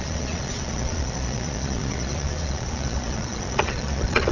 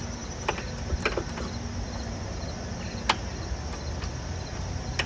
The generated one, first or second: first